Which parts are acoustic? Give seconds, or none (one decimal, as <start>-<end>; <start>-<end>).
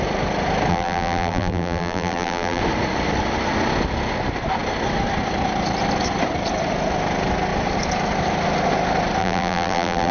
0.0-0.7; 2.6-9.2